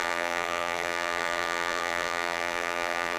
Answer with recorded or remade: remade